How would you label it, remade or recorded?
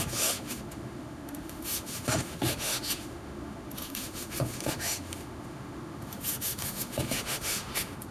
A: remade